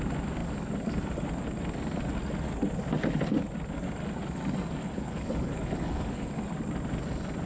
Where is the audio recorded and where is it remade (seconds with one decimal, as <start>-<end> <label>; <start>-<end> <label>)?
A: 0.0-4.8 recorded; 4.8-6.3 remade; 6.3-7.5 recorded